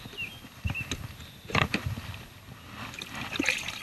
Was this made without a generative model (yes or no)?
yes